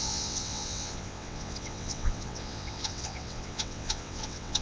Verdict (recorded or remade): remade